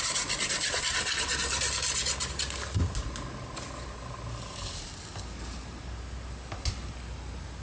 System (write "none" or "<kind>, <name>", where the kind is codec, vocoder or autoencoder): none